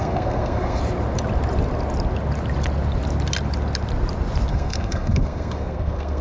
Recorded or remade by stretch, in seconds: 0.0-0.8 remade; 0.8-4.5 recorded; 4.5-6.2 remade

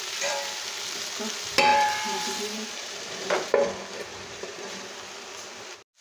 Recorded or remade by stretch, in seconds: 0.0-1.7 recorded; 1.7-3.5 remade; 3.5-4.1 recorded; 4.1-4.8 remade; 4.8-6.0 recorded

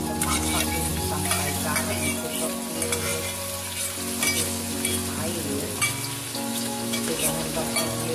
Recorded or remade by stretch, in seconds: 0.0-6.5 recorded; 6.5-7.6 remade; 7.6-8.1 recorded

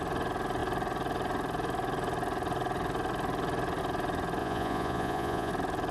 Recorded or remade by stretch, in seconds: 0.0-4.4 recorded; 4.4-5.5 remade; 5.5-5.9 recorded